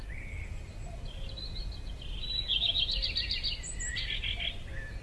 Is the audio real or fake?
real